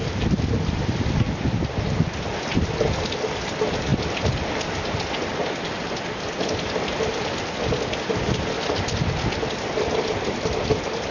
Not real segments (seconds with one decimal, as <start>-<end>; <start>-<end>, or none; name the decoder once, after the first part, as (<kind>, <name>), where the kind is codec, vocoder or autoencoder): none